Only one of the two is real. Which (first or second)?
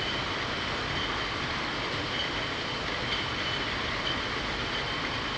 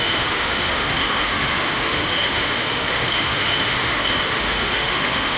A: first